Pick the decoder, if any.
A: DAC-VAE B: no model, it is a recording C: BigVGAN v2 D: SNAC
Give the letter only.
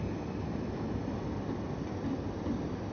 B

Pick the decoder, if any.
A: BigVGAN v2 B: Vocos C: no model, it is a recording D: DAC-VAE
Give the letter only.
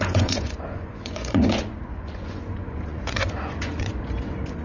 B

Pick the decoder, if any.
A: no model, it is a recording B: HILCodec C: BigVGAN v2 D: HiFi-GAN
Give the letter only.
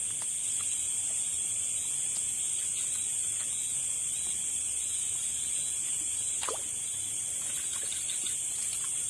A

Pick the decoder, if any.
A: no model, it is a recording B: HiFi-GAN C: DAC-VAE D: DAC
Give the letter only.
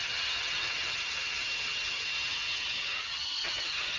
B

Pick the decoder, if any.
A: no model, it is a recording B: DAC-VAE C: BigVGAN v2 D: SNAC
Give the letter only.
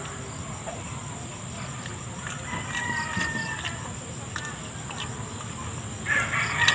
A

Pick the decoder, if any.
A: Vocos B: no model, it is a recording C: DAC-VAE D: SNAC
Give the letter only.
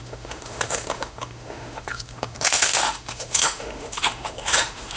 C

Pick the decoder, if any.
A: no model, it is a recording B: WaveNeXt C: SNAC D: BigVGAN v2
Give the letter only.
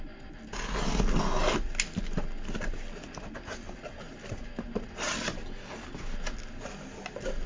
A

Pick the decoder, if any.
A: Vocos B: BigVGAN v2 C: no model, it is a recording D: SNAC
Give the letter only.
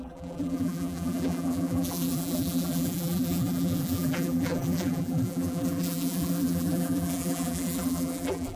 B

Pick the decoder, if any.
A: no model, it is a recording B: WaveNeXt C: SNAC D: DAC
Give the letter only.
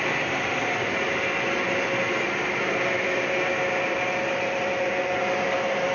A